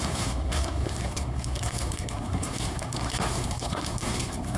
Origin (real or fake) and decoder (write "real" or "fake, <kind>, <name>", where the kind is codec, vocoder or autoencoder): fake, codec, SNAC